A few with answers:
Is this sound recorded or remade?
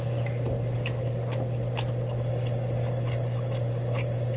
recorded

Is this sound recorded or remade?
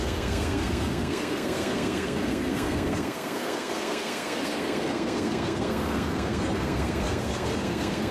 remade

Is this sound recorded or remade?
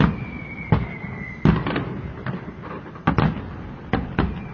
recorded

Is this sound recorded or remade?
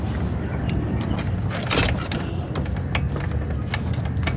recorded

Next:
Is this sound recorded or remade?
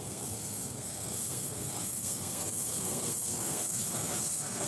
remade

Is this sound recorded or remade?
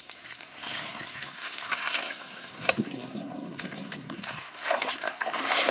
remade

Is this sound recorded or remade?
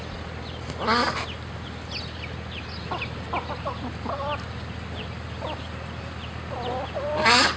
recorded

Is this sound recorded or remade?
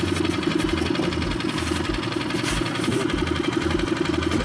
recorded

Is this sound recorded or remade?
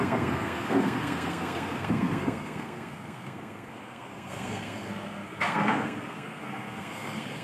remade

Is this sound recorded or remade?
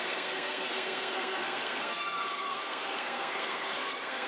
remade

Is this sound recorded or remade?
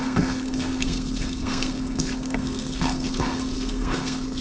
remade